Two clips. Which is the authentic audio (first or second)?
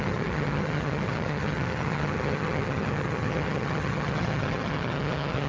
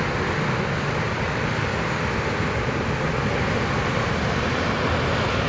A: second